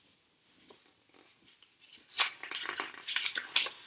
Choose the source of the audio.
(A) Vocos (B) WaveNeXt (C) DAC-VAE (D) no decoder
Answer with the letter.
D